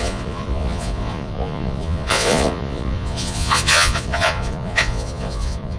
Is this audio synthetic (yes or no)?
yes